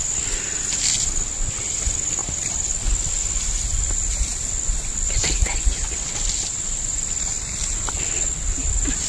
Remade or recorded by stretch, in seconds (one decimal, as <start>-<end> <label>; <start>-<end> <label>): 0.0-9.1 recorded